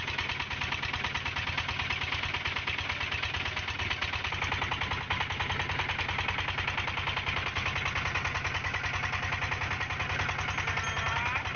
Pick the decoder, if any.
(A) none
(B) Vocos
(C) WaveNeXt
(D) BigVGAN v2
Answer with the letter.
A